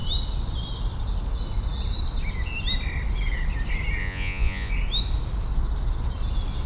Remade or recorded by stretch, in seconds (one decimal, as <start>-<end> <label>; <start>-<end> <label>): 0.0-4.0 recorded; 4.0-4.7 remade; 4.7-6.7 recorded